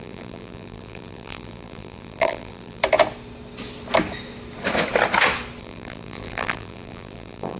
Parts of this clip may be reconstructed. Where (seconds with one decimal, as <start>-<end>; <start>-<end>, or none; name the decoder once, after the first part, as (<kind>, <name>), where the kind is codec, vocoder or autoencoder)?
0.0-2.8 (vocoder, BigVGAN v2); 5.6-7.6